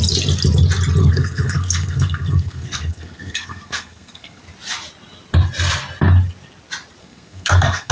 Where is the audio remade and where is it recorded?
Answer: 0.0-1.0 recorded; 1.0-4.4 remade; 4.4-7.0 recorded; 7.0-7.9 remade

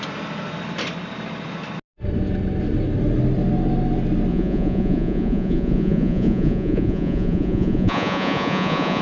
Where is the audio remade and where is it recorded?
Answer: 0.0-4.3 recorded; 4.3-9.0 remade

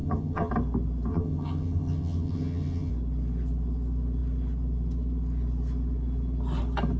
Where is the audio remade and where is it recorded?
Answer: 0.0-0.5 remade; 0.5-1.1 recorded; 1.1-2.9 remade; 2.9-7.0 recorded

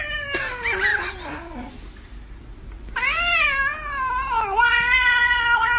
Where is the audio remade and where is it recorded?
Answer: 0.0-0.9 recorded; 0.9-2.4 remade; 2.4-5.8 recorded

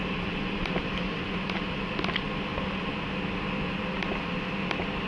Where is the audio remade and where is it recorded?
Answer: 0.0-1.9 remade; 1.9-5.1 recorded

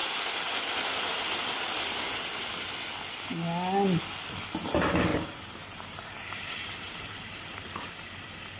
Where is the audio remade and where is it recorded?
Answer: 0.0-5.1 recorded; 5.1-8.1 remade; 8.1-8.6 recorded

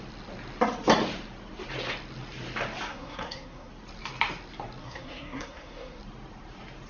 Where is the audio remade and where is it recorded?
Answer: 0.0-2.9 recorded; 2.9-3.7 remade; 3.7-4.8 recorded; 4.8-6.0 remade; 6.0-6.9 recorded